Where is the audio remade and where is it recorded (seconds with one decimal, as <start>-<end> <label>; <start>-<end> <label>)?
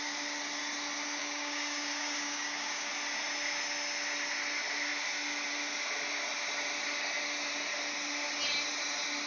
0.0-1.2 recorded; 1.2-2.9 remade; 2.9-9.3 recorded